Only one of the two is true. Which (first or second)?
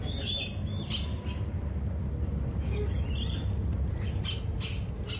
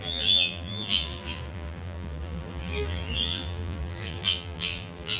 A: first